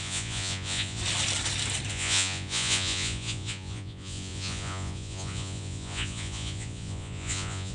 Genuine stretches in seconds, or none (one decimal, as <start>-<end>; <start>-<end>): 1.0-1.9